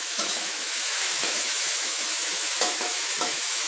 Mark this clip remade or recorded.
remade